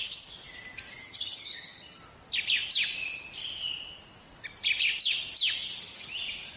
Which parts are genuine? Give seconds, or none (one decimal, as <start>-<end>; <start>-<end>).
0.0-1.0; 2.0-5.6; 6.1-6.6